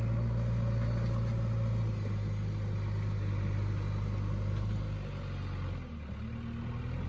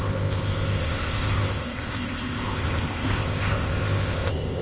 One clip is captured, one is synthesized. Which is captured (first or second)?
first